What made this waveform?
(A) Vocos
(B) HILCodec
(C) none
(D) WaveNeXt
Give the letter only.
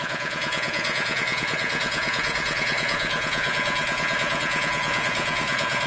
A